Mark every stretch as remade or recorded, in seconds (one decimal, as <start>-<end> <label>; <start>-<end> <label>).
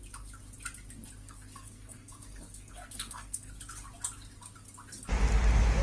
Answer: 0.0-1.2 recorded; 1.2-3.5 remade; 3.5-5.8 recorded